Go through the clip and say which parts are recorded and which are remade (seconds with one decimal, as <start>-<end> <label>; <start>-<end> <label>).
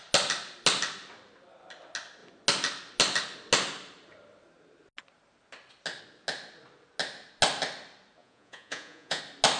0.0-8.2 recorded; 8.2-9.2 remade; 9.2-9.6 recorded